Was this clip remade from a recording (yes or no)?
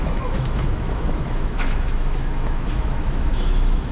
yes